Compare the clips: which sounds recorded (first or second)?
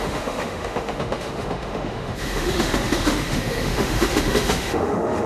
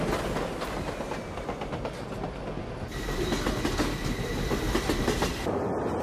second